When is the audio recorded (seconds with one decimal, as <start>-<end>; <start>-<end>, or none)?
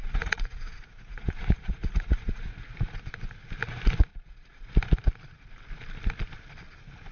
2.7-4.1; 4.7-7.1